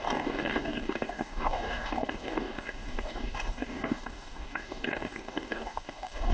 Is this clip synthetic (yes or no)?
yes